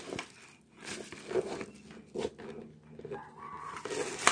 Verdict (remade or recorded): recorded